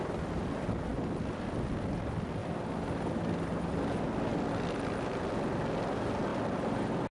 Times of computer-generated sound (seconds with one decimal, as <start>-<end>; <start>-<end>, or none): none